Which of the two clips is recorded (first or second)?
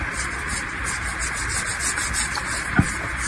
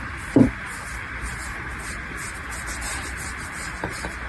second